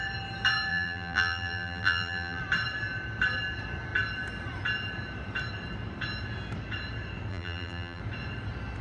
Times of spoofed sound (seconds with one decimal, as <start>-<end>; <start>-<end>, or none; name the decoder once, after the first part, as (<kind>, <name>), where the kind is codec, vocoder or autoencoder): 0.7-2.4 (vocoder, BigVGAN v2); 7.3-8.0